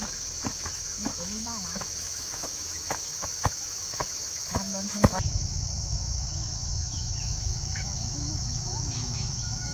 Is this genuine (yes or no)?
no